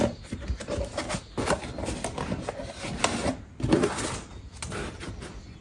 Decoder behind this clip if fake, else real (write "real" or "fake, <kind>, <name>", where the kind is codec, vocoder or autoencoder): real